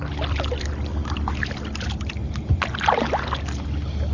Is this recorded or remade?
recorded